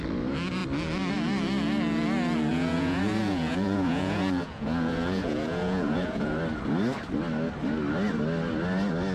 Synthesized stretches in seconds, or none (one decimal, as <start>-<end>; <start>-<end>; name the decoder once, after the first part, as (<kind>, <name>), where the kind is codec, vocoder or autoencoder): 2.5-6.4 (vocoder, Vocos)